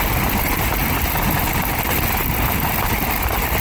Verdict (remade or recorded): recorded